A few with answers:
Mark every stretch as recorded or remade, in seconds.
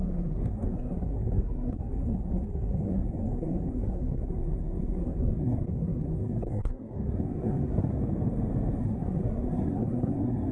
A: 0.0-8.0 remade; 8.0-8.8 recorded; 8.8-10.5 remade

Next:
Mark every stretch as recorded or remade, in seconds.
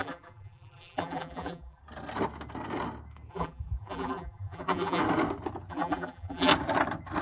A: 0.0-1.8 remade; 1.8-3.3 recorded; 3.3-5.0 remade; 5.0-5.7 recorded; 5.7-6.5 remade; 6.5-7.2 recorded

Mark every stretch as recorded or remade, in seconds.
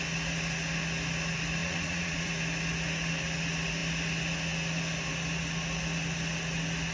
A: 0.0-1.6 recorded; 1.6-2.3 remade; 2.3-6.9 recorded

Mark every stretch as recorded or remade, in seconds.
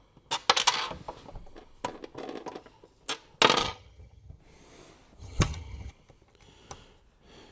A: 0.0-3.6 recorded; 3.6-4.4 remade; 4.4-5.2 recorded; 5.2-5.9 remade; 5.9-7.5 recorded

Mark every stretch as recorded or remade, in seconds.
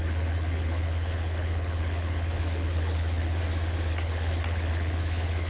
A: 0.0-3.4 remade; 3.4-3.9 recorded; 3.9-5.5 remade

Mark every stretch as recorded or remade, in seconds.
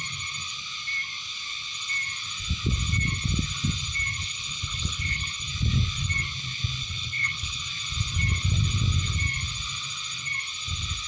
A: 0.0-4.2 recorded; 4.2-5.3 remade; 5.3-6.8 recorded; 6.8-7.6 remade; 7.6-11.1 recorded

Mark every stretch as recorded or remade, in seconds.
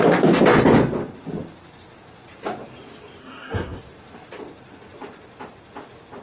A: 0.0-3.2 recorded; 3.2-3.8 remade; 3.8-6.2 recorded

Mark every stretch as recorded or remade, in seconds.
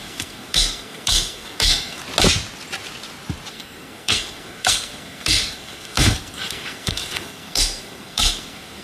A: 0.0-2.0 remade; 2.0-3.5 recorded; 3.5-8.8 remade